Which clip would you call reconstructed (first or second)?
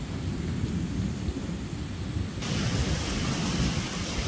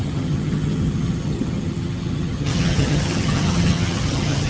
second